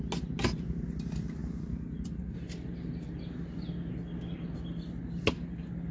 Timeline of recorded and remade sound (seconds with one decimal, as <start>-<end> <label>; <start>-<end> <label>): 0.0-5.9 recorded